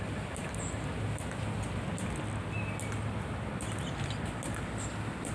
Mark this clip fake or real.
real